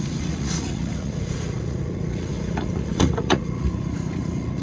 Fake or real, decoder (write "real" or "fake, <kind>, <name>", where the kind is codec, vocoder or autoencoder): fake, vocoder, Vocos